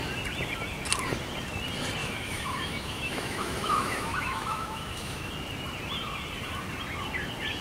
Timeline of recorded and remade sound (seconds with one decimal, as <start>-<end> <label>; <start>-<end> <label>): 0.0-2.0 recorded; 2.0-5.3 remade; 5.3-7.6 recorded